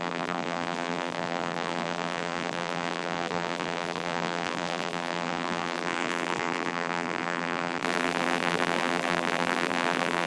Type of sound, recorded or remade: remade